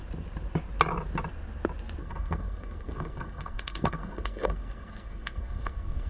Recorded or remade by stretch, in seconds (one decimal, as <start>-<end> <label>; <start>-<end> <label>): 0.0-2.0 recorded; 2.0-6.1 remade